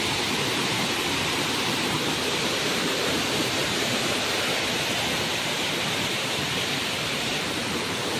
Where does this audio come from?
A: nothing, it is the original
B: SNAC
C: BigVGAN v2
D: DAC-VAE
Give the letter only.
C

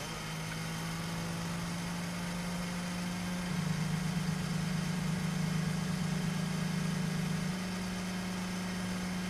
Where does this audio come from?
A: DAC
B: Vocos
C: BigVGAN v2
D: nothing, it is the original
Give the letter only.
D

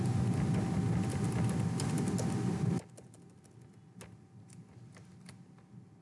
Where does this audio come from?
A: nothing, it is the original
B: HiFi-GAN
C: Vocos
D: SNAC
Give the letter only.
A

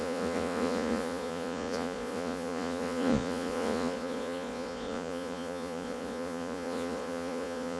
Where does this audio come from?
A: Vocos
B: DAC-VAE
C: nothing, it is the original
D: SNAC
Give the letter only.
A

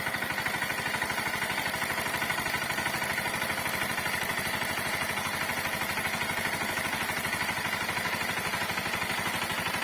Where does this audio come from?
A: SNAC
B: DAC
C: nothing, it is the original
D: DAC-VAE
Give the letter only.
C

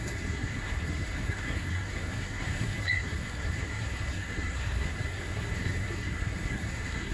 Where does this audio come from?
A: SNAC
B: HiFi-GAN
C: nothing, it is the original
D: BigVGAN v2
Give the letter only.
A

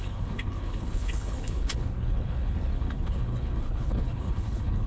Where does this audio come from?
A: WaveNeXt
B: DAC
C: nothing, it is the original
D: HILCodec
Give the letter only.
D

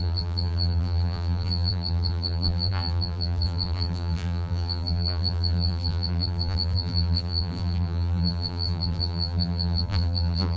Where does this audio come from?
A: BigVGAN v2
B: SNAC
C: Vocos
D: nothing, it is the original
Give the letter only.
A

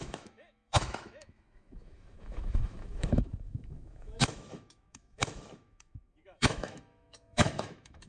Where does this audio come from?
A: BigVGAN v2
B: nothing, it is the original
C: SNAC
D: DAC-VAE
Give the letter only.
D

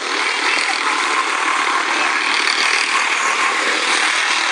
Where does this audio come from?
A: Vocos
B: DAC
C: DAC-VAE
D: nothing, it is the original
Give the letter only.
D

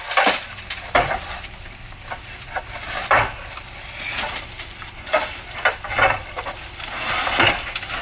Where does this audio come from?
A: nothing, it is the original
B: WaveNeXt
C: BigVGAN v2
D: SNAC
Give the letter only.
A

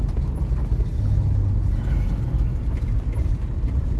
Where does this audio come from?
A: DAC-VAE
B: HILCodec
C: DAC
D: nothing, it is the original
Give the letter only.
D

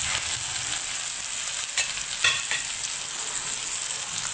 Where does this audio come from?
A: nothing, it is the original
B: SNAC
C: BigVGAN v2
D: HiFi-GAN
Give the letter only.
A